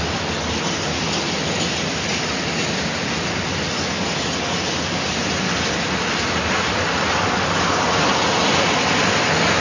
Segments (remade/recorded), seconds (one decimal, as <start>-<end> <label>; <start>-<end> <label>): 0.0-9.6 recorded